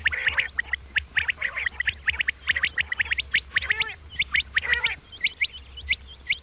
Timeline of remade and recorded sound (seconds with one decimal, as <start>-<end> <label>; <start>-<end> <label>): 0.0-6.4 recorded